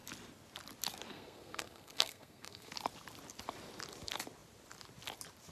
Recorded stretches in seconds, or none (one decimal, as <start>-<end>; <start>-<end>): 0.0-1.1; 2.7-5.5